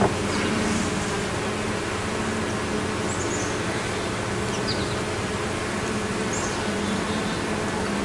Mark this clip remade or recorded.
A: recorded